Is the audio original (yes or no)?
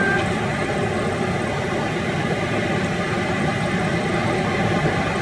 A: yes